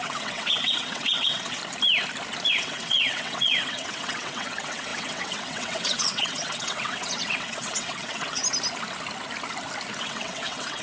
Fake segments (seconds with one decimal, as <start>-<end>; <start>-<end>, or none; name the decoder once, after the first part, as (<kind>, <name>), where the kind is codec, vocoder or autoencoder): 0.0-1.6 (vocoder, WaveNeXt); 2.5-8.4; 10.0-10.8